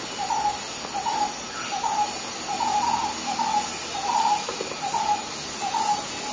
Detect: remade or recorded recorded